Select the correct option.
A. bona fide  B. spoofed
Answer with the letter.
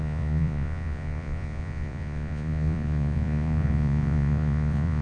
B